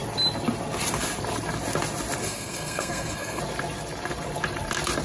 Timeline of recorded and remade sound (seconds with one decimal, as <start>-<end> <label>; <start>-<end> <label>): 0.0-2.2 recorded; 2.2-3.4 remade; 3.4-5.0 recorded